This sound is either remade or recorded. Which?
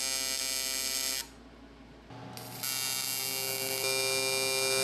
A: recorded